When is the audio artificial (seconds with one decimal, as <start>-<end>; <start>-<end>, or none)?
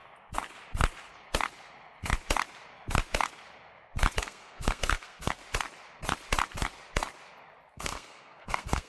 4.2-5.4; 7.7-8.9